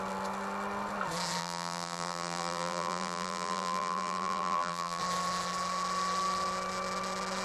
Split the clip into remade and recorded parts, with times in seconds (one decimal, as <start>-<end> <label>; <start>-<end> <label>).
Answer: 0.0-1.4 recorded; 1.4-5.0 remade; 5.0-7.4 recorded